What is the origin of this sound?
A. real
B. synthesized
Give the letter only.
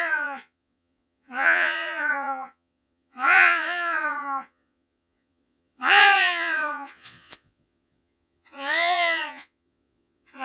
B